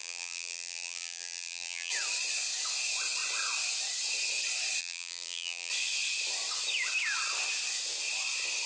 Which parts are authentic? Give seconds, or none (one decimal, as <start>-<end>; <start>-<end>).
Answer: 1.9-4.8; 5.7-8.7